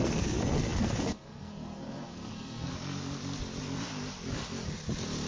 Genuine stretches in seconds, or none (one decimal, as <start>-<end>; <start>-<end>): 2.7-5.3